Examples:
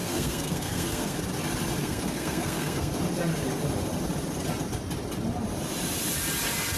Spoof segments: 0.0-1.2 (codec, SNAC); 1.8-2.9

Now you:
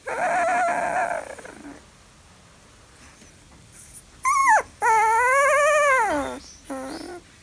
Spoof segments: none

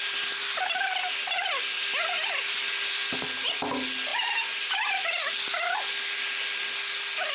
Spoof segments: none

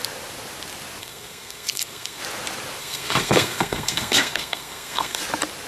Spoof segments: 1.0-2.2 (codec, SNAC); 2.8-5.2

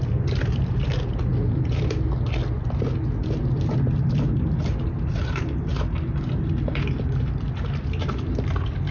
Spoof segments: none

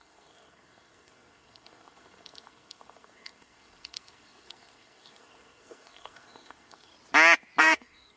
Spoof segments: 0.0-6.9 (codec, SNAC); 7.6-8.2

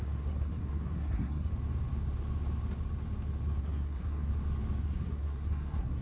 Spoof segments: 0.0-1.5 (codec, SNAC); 3.6-4.3; 4.8-6.0